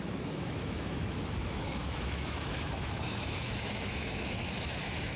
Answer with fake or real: fake